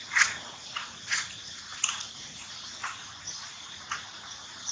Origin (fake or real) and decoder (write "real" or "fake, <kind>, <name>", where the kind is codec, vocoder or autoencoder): fake, vocoder, Vocos